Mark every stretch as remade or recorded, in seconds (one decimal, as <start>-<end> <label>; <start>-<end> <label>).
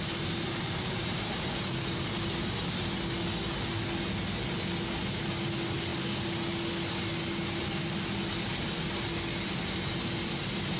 0.0-10.8 recorded